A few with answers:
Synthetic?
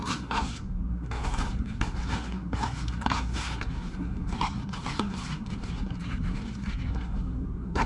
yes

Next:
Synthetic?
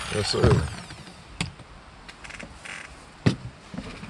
no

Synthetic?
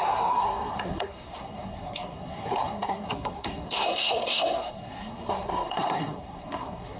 yes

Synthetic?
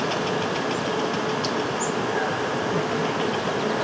no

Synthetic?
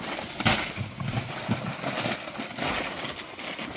no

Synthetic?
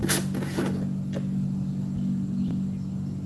no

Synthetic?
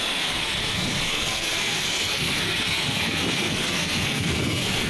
yes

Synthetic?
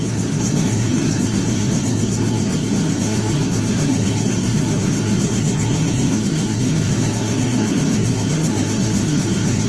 yes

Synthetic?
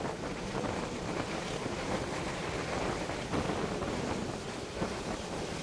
no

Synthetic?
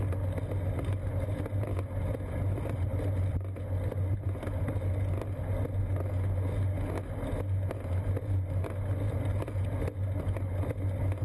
no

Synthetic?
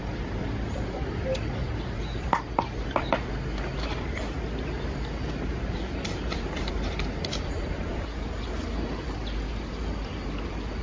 no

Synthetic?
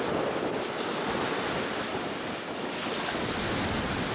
no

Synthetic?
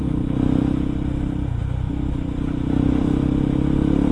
no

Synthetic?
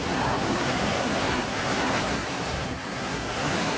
yes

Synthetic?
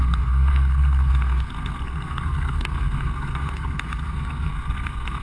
yes